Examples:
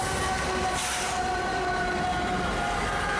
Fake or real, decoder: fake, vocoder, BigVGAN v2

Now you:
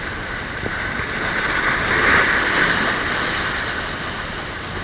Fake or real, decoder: real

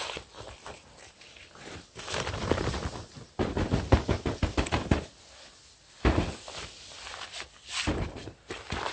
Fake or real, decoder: real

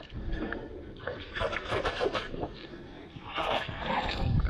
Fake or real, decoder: fake, codec, SNAC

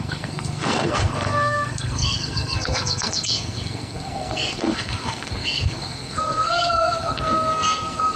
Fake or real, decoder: fake, codec, SNAC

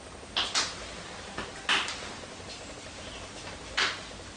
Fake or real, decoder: real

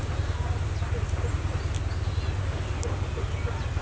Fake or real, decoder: real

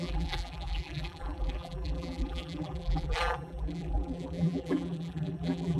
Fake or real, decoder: fake, vocoder, BigVGAN v2